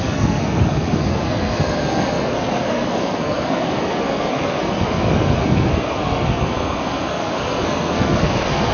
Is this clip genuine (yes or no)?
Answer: no